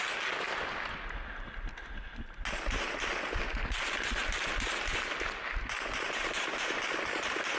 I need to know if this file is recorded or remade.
recorded